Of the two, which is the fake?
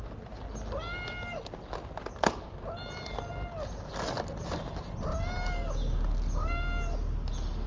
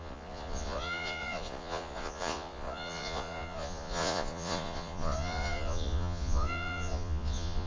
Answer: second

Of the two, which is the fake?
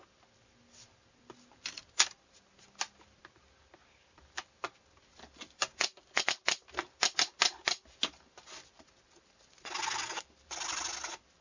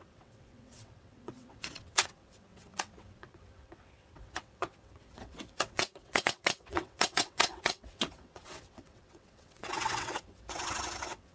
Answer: second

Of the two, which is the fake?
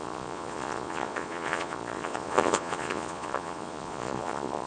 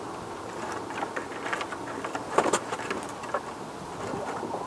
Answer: first